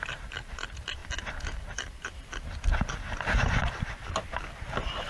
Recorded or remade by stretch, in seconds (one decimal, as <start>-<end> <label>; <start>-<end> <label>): 0.0-5.1 remade